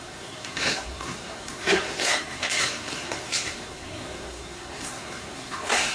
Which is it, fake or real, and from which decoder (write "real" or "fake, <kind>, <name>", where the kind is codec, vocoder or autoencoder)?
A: fake, codec, SNAC